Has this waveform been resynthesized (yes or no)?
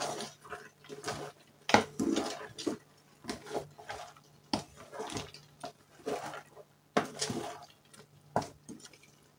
no